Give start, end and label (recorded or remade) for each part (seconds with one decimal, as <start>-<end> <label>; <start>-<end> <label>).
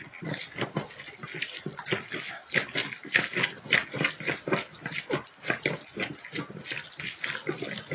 0.0-7.9 recorded